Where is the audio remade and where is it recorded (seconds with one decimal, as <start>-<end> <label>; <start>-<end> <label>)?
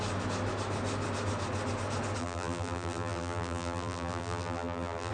0.0-2.2 recorded; 2.2-5.1 remade